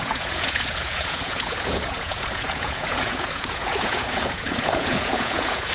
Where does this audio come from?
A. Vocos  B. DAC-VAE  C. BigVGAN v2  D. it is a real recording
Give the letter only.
A